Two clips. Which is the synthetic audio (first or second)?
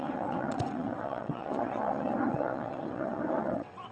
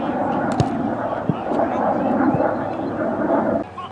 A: first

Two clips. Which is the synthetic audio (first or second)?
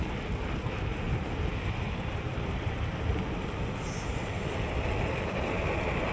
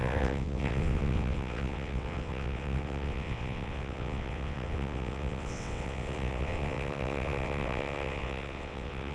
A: second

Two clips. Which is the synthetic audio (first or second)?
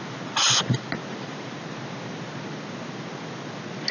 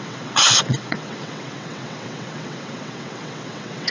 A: second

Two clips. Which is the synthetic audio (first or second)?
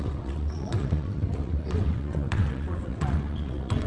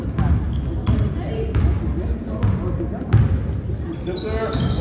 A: first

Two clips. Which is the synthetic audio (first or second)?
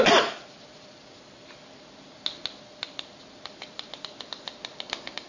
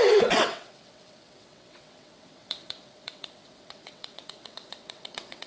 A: second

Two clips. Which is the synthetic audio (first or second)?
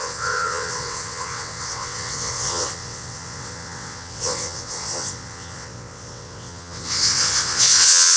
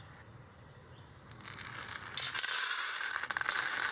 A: first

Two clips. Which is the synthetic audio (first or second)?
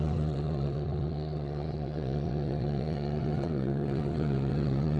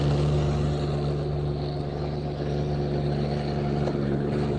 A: first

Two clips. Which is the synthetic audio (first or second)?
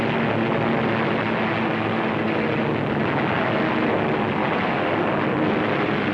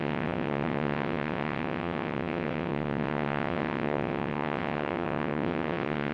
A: second